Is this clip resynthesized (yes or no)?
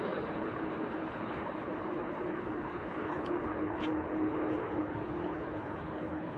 yes